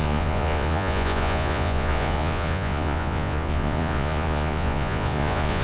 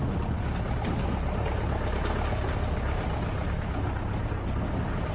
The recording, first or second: second